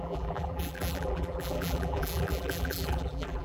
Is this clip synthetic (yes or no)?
yes